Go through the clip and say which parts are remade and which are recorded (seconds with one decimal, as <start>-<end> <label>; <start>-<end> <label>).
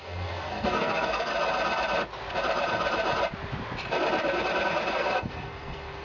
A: 0.0-1.3 remade; 1.3-4.9 recorded; 4.9-6.0 remade